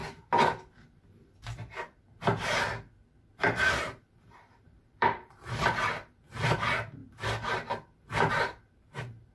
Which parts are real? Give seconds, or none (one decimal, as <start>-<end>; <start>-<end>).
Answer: 0.0-3.4; 7.0-8.3